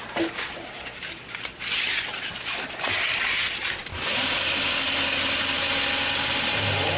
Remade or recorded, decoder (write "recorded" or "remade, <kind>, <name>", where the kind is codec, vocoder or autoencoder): recorded